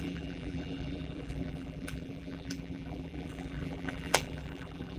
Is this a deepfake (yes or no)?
yes